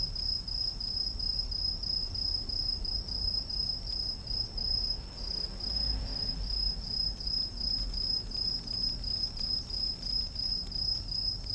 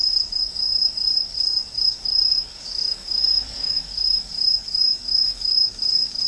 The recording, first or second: first